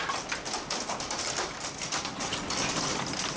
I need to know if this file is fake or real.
real